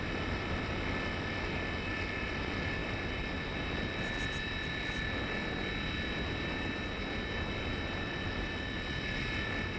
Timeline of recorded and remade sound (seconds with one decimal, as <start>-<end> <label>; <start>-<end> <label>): 0.0-9.8 recorded